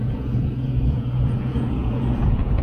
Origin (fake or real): fake